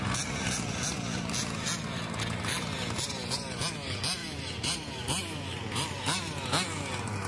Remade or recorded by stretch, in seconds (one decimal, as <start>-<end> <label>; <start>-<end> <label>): 0.0-4.2 recorded; 4.2-6.0 remade; 6.0-7.3 recorded